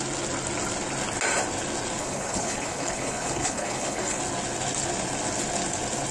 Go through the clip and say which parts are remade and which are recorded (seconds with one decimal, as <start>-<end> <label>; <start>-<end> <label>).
0.0-2.0 recorded; 2.0-4.2 remade; 4.2-6.1 recorded